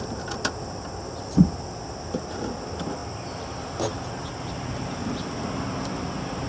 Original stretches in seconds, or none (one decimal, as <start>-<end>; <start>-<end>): 0.0-6.5